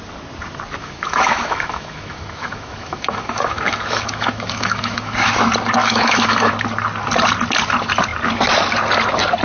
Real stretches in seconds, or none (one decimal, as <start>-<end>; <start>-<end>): 0.0-0.8; 5.3-5.8; 6.5-9.4